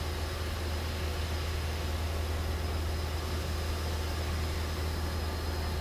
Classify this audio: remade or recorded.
recorded